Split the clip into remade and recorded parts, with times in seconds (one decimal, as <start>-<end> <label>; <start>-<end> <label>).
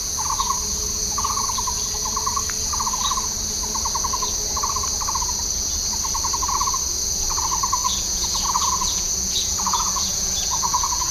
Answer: 0.0-7.8 recorded; 7.8-11.1 remade